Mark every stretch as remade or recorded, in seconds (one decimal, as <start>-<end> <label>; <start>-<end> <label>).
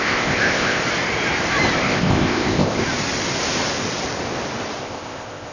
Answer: 0.0-0.8 remade; 0.8-1.8 recorded; 1.8-2.8 remade; 2.8-4.8 recorded; 4.8-5.5 remade